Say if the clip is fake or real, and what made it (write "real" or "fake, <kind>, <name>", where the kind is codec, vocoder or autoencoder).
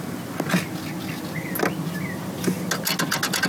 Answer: real